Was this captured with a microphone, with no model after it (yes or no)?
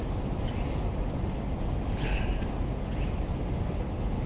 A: yes